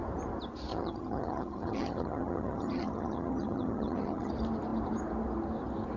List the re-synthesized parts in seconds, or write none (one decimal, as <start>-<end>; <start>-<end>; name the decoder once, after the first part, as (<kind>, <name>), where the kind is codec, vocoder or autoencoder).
0.7-4.3 (vocoder, HiFi-GAN)